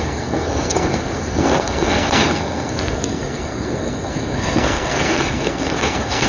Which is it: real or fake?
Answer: fake